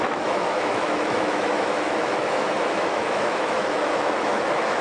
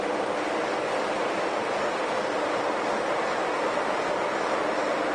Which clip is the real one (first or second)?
second